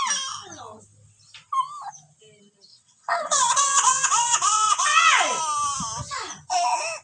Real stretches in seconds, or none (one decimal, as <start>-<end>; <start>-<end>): 0.0-2.7; 5.4-7.0

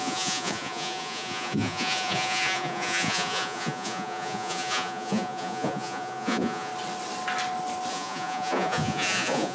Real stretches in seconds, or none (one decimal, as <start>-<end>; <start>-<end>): 6.7-7.9